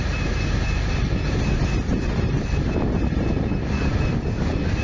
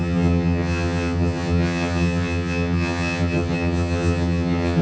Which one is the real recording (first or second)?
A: first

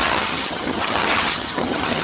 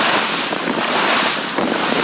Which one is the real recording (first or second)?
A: second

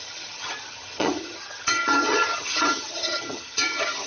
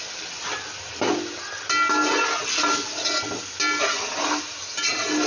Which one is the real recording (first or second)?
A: second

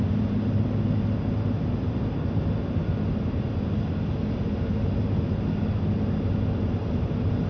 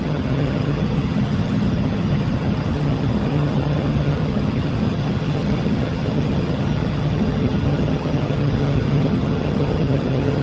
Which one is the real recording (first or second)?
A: first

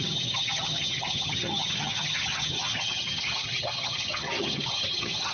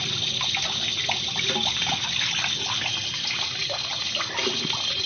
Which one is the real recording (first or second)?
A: second